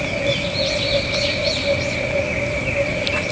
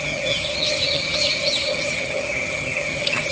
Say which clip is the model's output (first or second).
second